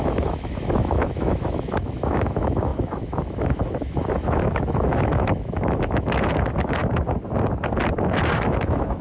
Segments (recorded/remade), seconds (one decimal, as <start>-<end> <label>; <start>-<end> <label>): 0.0-6.8 remade; 6.8-8.3 recorded; 8.3-9.0 remade